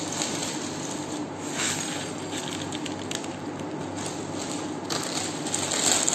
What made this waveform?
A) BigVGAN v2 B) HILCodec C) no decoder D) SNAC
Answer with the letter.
C